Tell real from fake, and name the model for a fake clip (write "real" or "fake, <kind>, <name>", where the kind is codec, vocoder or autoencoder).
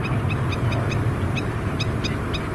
real